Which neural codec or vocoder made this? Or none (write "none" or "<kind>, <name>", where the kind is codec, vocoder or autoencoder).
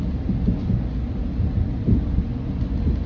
none